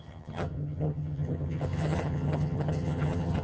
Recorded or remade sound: remade